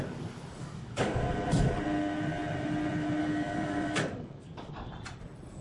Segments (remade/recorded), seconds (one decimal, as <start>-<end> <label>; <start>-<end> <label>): 0.0-0.6 recorded; 0.6-1.2 remade; 1.2-3.2 recorded; 3.2-4.9 remade; 4.9-5.6 recorded

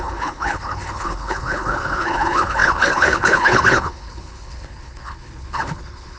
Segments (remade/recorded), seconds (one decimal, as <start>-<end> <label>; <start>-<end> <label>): 0.0-6.2 remade

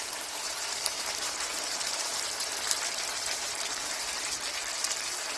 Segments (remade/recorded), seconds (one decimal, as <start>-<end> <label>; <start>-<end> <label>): 0.0-2.5 remade; 2.5-3.1 recorded; 3.1-4.6 remade; 4.6-5.4 recorded

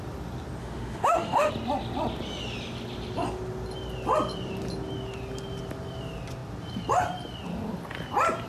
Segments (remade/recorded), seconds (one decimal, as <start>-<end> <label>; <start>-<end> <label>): 0.0-0.6 recorded; 0.6-1.5 remade; 1.5-8.5 recorded

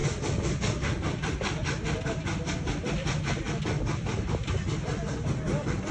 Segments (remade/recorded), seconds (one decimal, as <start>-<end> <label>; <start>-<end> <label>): 0.0-1.6 remade; 1.6-2.9 recorded; 2.9-4.1 remade; 4.1-4.8 recorded; 4.8-5.9 remade

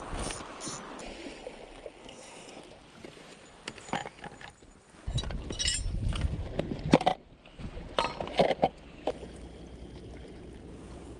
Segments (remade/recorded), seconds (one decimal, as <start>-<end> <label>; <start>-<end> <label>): 0.0-2.0 recorded; 2.0-2.6 remade; 2.6-11.2 recorded

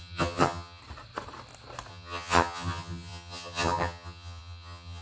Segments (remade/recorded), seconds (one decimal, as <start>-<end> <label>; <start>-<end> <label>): 0.0-0.8 remade; 0.8-1.9 recorded; 1.9-5.0 remade

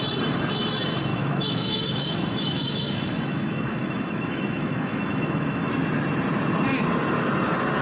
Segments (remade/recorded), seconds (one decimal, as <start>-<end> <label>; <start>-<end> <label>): 0.0-1.1 recorded; 1.1-5.7 remade; 5.7-7.8 recorded